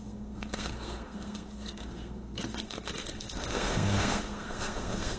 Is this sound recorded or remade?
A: remade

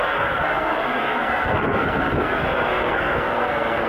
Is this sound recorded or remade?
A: remade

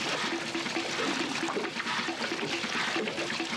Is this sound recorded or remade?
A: recorded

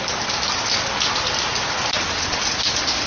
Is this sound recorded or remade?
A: recorded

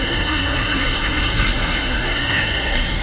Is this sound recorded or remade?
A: remade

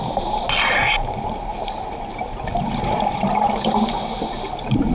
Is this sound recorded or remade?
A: recorded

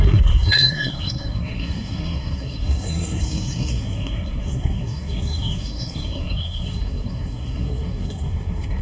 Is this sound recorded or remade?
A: remade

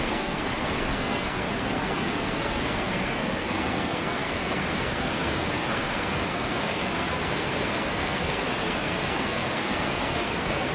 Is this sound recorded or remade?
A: remade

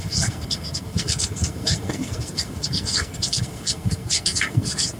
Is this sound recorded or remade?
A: remade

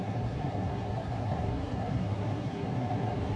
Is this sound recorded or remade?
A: remade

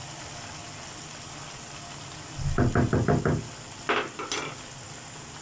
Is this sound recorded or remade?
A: recorded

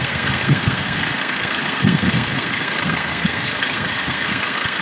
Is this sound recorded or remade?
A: remade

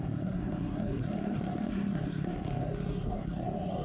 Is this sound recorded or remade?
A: remade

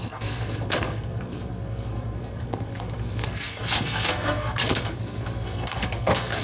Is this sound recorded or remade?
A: remade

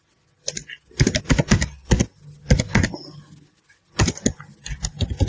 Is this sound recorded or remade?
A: recorded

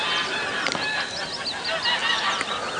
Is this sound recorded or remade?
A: recorded